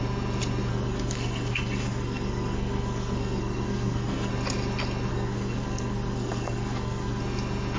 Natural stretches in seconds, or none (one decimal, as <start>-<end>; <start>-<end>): 0.0-0.7; 4.3-5.1; 7.2-7.8